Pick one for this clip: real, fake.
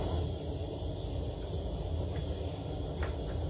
real